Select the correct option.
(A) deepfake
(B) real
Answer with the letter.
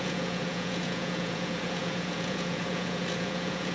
A